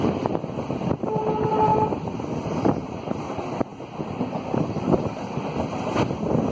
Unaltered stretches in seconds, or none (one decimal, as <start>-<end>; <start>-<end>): 0.0-6.5